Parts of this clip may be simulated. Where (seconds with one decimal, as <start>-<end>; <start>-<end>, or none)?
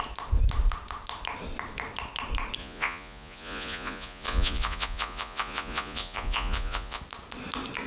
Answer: 2.6-7.0